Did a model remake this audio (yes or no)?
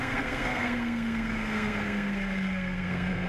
yes